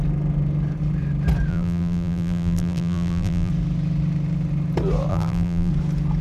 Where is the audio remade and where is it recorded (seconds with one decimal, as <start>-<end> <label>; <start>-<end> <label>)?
0.0-1.5 recorded; 1.5-3.5 remade; 3.5-5.1 recorded; 5.1-5.7 remade; 5.7-6.2 recorded